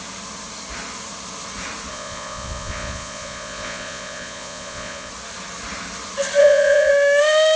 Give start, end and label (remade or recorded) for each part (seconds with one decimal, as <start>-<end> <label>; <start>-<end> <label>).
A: 0.0-1.9 recorded; 1.9-5.1 remade; 5.1-6.4 recorded; 6.4-6.9 remade; 6.9-7.6 recorded